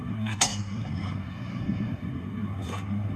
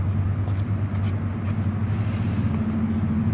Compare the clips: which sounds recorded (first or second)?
second